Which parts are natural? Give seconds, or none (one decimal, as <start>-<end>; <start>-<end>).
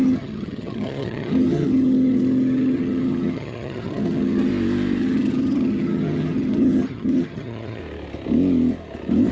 4.5-5.0; 7.8-9.3